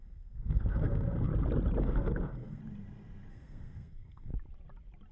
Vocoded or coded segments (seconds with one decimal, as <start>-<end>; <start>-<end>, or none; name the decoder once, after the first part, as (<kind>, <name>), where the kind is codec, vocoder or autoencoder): 0.0-1.3 (codec, SNAC); 1.8-2.6; 3.3-4.3